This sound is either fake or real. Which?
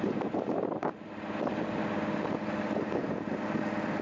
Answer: real